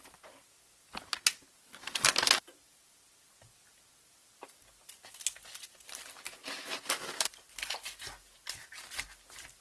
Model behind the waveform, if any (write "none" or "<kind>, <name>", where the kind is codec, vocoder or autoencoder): none